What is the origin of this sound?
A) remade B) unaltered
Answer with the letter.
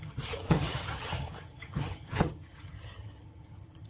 A